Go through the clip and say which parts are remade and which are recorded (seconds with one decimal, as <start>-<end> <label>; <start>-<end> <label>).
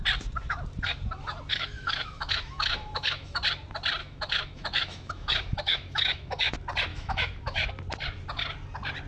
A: 0.0-1.5 recorded; 1.5-3.4 remade; 3.4-4.0 recorded; 4.0-6.5 remade; 6.5-6.9 recorded; 6.9-7.7 remade; 7.7-9.1 recorded